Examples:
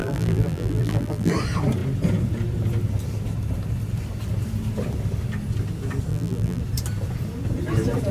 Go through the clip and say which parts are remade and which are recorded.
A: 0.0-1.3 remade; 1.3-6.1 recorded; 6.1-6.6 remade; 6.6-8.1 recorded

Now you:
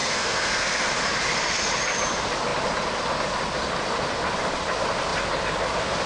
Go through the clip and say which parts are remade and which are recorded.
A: 0.0-0.9 remade; 0.9-6.1 recorded

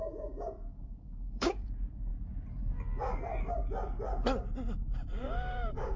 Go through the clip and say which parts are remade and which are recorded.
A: 0.0-2.1 remade; 2.1-5.2 recorded; 5.2-6.0 remade